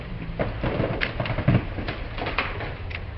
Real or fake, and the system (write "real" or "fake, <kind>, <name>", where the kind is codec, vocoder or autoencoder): real